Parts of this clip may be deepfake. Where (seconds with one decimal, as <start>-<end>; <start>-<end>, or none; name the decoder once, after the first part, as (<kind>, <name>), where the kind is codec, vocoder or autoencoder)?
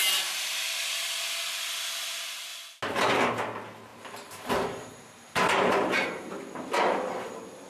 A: 0.0-1.1 (vocoder, BigVGAN v2); 3.9-6.3